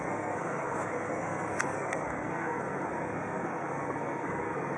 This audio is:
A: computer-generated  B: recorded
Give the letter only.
A